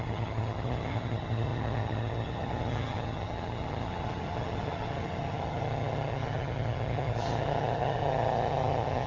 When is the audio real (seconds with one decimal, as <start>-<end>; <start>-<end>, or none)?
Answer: none